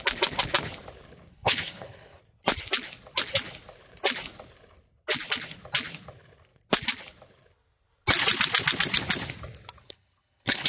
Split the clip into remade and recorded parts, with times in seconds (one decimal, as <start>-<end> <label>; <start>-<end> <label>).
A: 0.0-1.3 recorded; 1.3-2.2 remade; 2.2-9.8 recorded; 9.8-10.7 remade